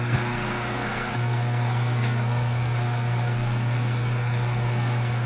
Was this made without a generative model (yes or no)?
no